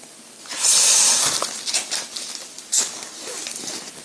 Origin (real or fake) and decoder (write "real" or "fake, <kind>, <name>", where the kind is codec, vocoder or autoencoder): real